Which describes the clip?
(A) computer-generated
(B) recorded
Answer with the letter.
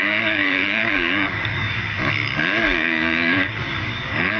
A